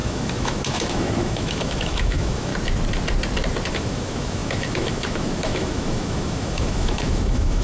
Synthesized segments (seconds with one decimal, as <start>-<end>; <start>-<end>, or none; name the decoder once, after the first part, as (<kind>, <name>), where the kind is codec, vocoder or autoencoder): 0.0-2.5 (autoencoder, DAC-VAE); 3.7-7.6